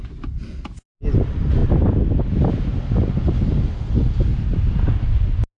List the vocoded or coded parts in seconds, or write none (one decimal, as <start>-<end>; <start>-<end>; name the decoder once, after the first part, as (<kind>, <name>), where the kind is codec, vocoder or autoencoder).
none

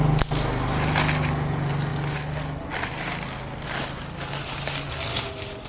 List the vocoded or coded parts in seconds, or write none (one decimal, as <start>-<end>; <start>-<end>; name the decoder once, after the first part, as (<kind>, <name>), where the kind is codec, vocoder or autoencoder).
none

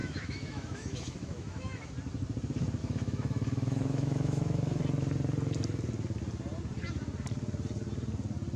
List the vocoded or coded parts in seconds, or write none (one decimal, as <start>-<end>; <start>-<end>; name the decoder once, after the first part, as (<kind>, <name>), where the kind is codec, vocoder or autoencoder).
0.0-1.9 (autoencoder, DAC-VAE); 2.8-4.8

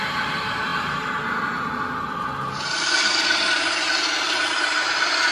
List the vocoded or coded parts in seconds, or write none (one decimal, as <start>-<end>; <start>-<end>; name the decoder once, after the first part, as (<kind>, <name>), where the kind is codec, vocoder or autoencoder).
none

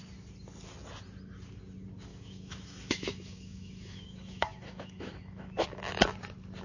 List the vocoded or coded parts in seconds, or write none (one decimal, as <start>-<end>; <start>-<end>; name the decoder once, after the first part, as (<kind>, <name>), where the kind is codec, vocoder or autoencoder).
2.1-5.9 (autoencoder, DAC-VAE)

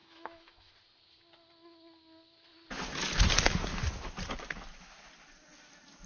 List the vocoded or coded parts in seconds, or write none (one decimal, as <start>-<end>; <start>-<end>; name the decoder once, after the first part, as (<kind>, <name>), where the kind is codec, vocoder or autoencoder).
0.0-0.7 (autoencoder, DAC-VAE)

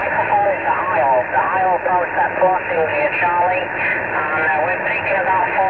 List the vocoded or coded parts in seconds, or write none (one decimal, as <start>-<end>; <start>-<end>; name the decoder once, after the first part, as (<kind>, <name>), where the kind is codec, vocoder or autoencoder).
0.0-0.8 (autoencoder, DAC-VAE)

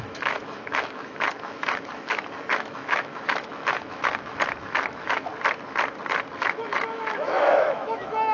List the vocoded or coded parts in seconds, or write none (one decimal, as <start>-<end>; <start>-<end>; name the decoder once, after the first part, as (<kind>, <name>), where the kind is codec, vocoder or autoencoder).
0.0-5.3 (autoencoder, DAC-VAE); 6.4-8.3